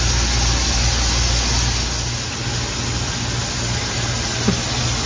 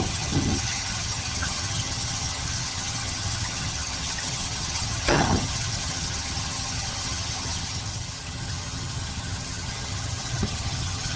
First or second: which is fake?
second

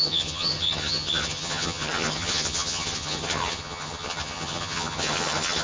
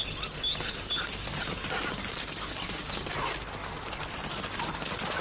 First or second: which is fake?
first